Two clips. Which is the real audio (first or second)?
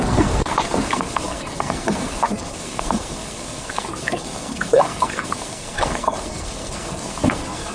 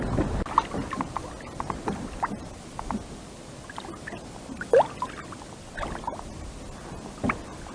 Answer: second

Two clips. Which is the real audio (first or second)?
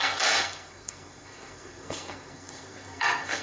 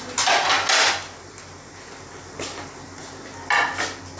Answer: second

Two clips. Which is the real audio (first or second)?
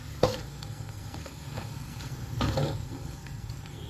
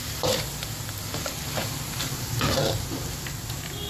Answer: second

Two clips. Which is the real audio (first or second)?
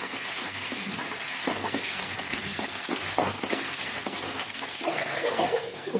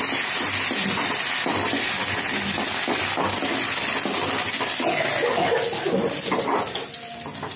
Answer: second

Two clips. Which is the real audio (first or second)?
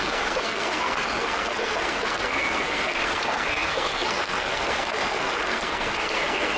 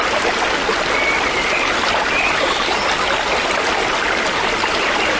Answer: second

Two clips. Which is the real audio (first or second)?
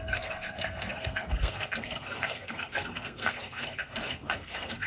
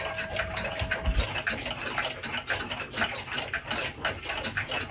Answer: second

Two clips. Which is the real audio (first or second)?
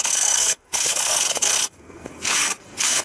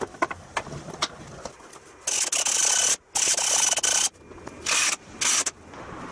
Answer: second